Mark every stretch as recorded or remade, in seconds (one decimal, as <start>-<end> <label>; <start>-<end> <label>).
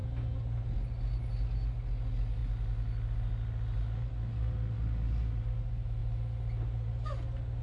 0.0-0.6 remade; 0.6-7.6 recorded